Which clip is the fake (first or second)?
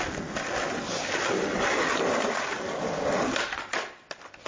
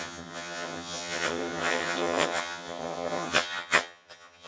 second